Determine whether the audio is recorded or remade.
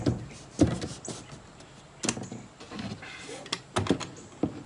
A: recorded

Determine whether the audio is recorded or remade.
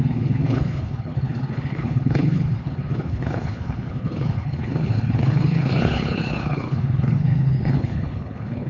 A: remade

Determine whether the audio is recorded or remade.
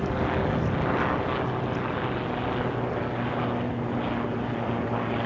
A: recorded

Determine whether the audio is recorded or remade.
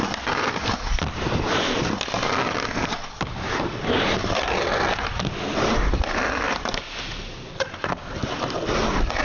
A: recorded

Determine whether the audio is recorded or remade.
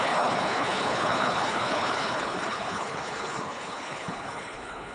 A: remade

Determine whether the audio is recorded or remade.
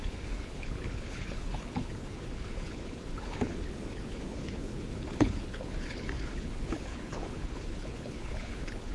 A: remade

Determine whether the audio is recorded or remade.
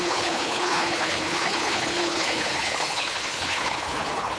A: remade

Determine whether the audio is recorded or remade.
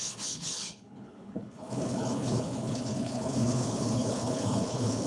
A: remade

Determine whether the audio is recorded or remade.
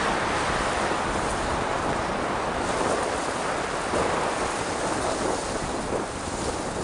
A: recorded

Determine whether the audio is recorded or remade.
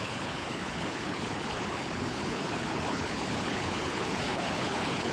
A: remade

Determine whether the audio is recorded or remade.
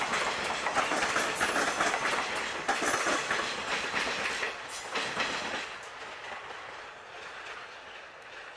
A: recorded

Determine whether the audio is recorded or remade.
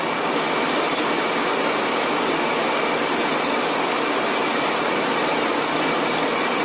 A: recorded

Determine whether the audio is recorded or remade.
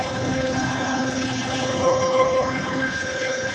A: remade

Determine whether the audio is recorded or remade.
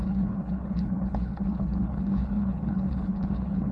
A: remade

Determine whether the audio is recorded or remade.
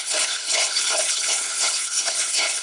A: remade